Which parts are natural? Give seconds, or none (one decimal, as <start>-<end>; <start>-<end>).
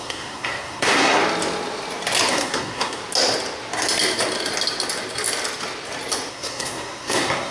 1.2-2.3; 3.0-6.3